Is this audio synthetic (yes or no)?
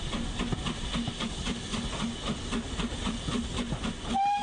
no